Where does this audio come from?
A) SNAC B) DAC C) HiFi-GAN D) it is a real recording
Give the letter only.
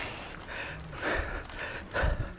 D